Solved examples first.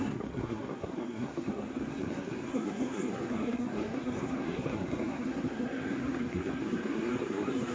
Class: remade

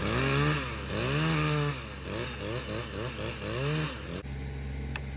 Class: recorded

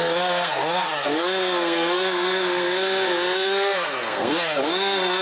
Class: remade